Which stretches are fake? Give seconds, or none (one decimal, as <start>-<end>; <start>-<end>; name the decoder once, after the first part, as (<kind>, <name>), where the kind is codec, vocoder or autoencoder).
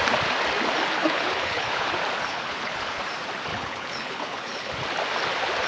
1.0-1.9 (codec, HILCodec); 2.3-3.0; 3.5-4.7